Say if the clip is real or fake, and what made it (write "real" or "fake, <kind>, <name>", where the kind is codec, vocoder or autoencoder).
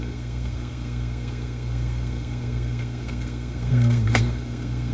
fake, codec, SNAC